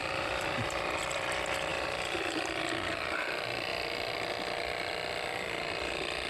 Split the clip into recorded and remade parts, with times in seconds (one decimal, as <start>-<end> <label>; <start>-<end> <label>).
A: 0.0-1.0 remade; 1.0-1.7 recorded; 1.7-2.6 remade; 2.6-6.3 recorded